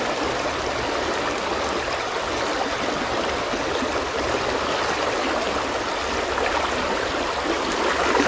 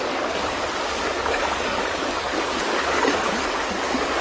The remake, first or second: second